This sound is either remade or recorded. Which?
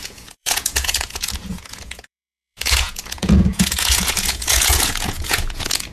remade